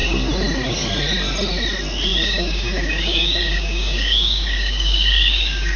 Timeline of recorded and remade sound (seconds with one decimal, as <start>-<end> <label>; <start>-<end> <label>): 0.0-2.1 recorded; 2.1-5.8 remade